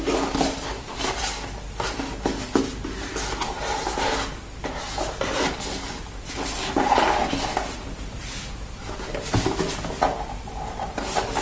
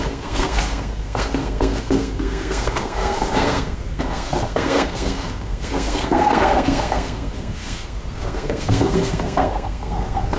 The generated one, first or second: second